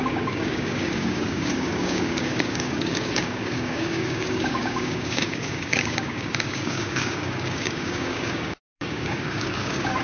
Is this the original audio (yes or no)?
no